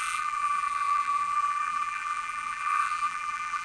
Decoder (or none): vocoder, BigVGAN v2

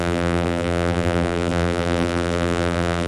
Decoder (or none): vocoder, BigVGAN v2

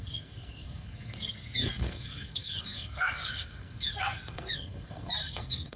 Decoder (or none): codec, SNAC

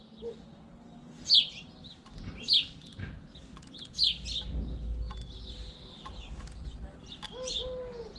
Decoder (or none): none